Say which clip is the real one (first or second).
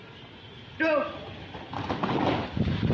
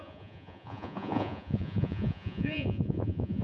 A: first